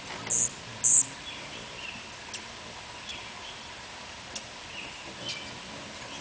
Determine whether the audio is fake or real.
real